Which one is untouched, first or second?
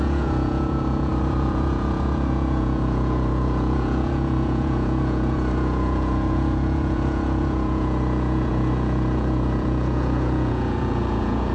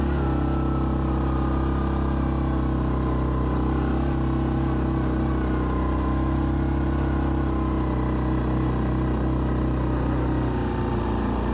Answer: second